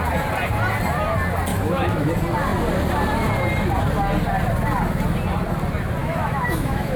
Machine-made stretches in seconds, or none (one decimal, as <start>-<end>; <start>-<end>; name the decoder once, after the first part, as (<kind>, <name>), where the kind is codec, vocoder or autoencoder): 1.5-2.1 (autoencoder, DAC-VAE); 6.0-7.0